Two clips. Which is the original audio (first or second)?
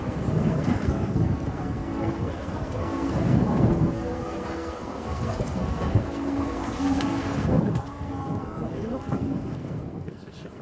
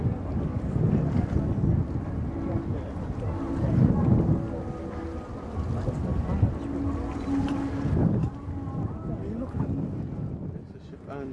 second